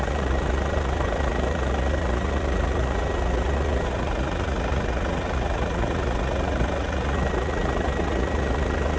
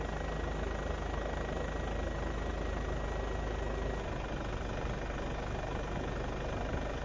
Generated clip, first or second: first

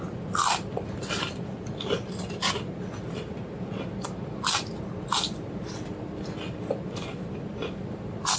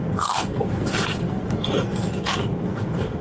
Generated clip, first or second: second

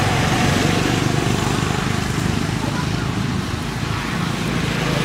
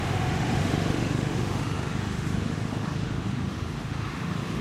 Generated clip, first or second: second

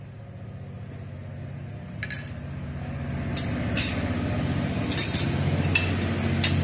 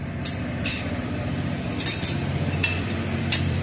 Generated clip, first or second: second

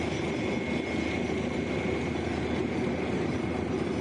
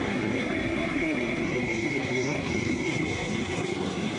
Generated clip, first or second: second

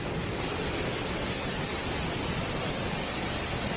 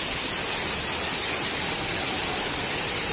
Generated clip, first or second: first